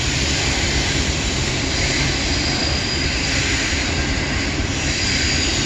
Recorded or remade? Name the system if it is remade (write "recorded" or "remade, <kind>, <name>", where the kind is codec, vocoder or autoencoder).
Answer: remade, vocoder, BigVGAN v2